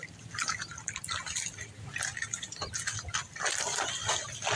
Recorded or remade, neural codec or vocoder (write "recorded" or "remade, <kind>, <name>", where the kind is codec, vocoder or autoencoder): recorded